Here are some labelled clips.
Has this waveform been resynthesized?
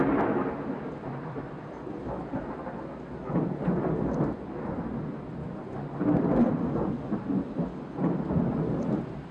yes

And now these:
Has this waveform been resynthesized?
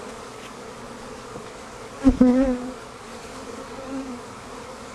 yes